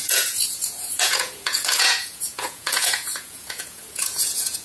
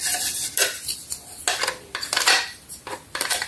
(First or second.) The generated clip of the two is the first